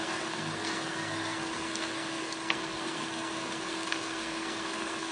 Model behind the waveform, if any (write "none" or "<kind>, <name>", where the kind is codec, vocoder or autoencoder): codec, SNAC